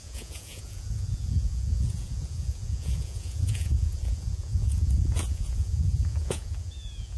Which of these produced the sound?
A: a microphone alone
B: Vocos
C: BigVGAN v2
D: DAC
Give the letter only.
B